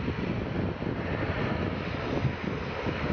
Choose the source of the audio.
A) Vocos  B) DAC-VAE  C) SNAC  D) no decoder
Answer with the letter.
D